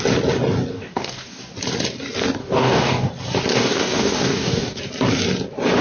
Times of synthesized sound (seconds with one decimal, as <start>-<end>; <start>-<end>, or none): 0.7-1.5; 2.4-3.1; 3.5-4.8